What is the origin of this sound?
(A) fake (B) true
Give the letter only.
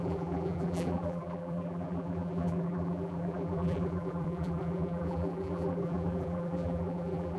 A